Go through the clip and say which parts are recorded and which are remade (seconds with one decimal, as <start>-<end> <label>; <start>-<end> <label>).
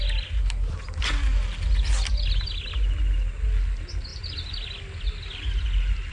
0.0-6.1 recorded